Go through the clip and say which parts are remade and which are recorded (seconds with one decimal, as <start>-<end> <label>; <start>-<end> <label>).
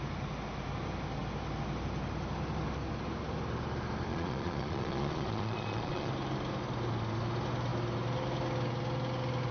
0.0-4.1 recorded; 4.1-6.1 remade; 6.1-9.5 recorded